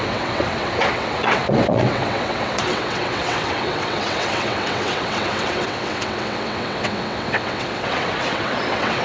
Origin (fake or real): fake